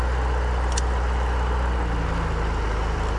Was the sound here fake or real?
real